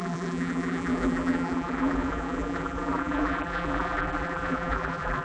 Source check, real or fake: fake